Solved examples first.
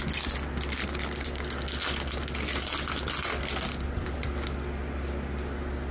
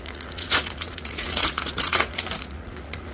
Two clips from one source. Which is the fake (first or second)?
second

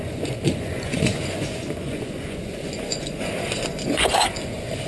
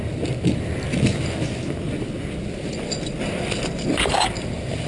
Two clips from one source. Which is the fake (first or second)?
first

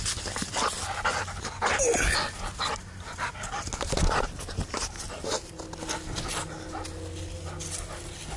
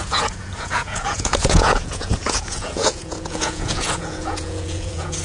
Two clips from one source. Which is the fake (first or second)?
second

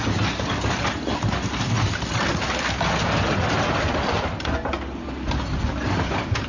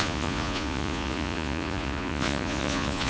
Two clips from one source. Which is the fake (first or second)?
second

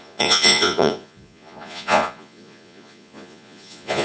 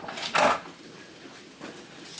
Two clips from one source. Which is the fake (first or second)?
first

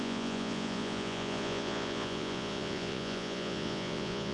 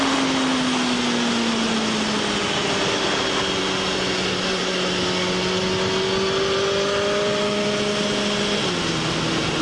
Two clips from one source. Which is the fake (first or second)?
first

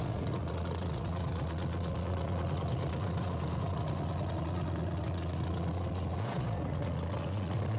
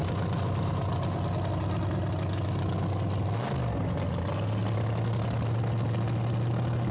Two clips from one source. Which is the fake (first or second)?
first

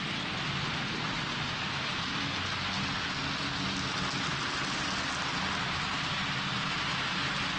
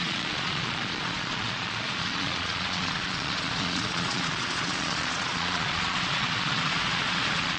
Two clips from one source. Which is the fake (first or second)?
second